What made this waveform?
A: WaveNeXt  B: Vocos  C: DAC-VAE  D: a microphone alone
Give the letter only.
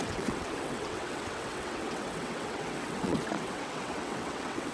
A